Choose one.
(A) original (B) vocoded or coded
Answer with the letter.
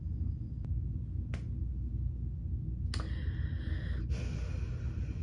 A